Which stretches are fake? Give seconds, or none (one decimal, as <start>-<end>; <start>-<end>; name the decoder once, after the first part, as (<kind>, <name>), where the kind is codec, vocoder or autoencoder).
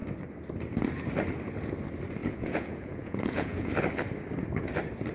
2.2-3.7 (vocoder, Vocos)